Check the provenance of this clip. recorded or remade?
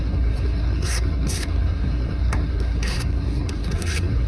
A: remade